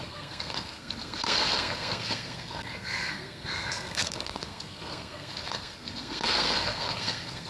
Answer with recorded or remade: remade